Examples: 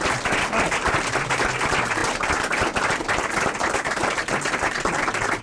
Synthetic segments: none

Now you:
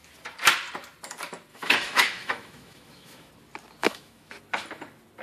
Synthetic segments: 1.5-3.3 (autoencoder, DAC-VAE); 3.8-4.3